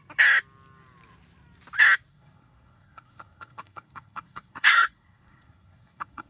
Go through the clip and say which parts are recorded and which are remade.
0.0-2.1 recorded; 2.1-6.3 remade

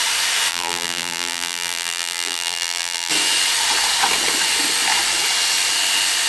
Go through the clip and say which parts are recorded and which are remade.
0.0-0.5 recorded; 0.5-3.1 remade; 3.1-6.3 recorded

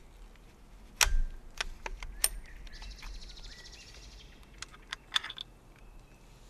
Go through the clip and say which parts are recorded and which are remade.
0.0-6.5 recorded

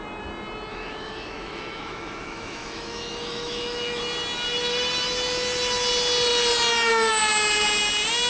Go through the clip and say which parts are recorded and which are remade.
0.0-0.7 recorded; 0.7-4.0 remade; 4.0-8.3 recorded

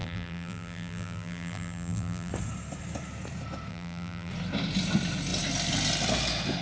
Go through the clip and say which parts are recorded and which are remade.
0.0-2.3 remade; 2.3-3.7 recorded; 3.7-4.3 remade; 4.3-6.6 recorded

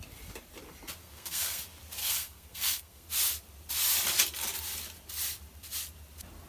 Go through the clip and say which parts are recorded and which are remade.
0.0-1.0 recorded; 1.0-1.6 remade; 1.6-2.0 recorded; 2.0-3.1 remade; 3.1-6.5 recorded